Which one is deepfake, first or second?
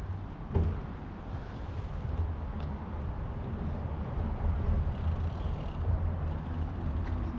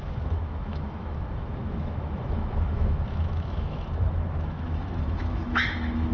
second